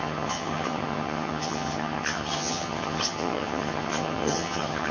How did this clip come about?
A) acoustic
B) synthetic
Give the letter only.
B